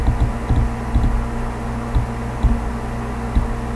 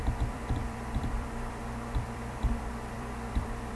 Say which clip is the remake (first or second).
second